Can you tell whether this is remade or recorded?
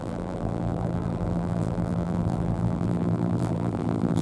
remade